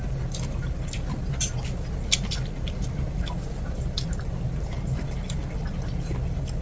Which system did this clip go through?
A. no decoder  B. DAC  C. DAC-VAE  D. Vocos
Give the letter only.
A